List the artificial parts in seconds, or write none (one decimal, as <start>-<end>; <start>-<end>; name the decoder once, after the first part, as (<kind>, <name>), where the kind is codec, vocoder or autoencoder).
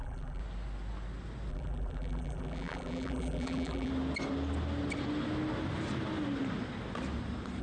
0.0-0.4 (vocoder, BigVGAN v2); 1.5-3.9